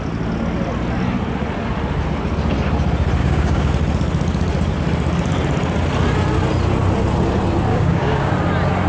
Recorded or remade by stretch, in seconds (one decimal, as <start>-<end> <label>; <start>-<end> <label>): 0.0-3.2 recorded; 3.2-3.7 remade; 3.7-7.7 recorded; 7.7-8.3 remade; 8.3-8.9 recorded